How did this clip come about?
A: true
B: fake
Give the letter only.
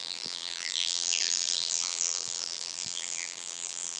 B